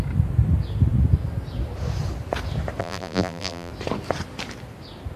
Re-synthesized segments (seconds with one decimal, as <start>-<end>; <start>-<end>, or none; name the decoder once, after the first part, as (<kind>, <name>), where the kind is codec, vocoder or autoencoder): 2.8-3.7 (vocoder, BigVGAN v2)